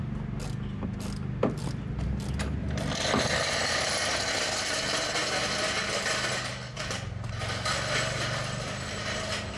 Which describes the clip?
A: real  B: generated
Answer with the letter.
A